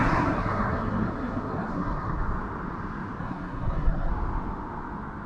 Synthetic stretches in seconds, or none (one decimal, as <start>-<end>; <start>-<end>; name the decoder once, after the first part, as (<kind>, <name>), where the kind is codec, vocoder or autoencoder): 0.0-2.2 (codec, SNAC); 3.2-4.1